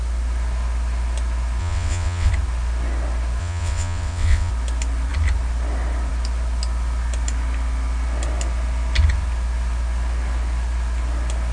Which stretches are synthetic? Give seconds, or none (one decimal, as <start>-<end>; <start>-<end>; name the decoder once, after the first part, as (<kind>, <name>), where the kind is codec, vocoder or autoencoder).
1.6-2.3 (vocoder, WaveNeXt); 3.4-4.5